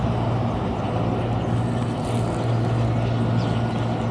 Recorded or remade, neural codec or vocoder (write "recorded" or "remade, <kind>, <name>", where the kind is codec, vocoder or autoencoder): recorded